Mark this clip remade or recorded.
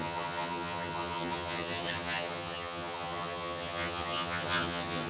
remade